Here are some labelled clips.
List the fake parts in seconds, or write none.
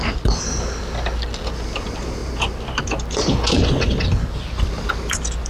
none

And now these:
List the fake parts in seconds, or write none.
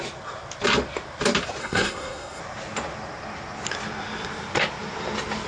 1.6-2.4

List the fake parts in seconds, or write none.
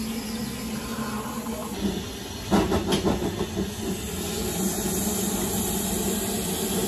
none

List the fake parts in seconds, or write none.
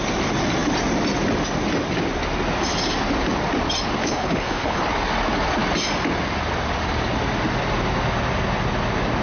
4.0-4.8